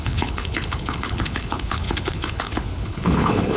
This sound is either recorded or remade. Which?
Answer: remade